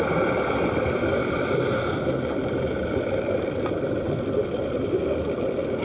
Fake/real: real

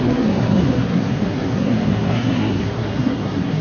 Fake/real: fake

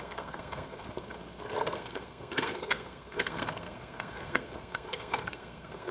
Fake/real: fake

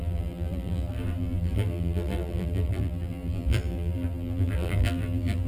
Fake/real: fake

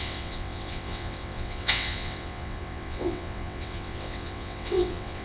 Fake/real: fake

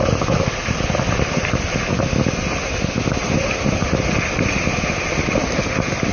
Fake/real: real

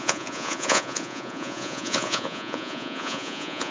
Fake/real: fake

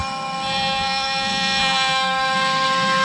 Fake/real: fake